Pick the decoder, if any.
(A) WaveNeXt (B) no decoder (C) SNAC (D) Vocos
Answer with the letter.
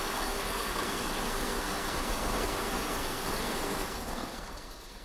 C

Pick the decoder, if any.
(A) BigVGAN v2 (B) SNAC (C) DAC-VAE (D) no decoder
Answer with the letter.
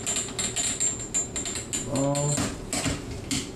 D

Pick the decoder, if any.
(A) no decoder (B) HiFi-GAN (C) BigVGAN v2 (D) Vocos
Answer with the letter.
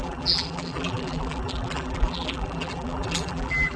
C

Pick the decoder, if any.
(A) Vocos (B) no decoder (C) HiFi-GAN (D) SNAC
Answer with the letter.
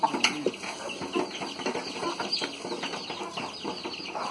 B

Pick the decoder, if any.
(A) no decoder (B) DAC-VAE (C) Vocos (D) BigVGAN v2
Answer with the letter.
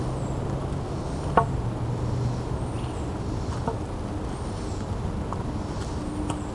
A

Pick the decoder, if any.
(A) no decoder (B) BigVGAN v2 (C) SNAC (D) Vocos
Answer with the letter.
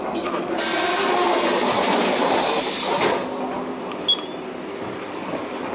A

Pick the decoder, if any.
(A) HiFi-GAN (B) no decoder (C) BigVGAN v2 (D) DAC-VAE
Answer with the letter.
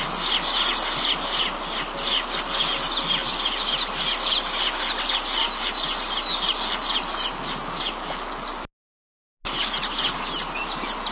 B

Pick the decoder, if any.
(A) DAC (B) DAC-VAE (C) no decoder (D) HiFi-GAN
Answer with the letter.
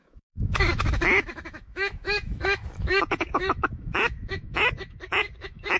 B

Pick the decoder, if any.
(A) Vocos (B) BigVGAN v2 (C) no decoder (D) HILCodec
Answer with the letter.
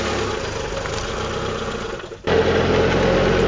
C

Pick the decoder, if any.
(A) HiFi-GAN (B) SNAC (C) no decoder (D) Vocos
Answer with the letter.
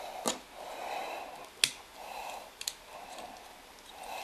C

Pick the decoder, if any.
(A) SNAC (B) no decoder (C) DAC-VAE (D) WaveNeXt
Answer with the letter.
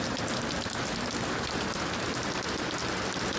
B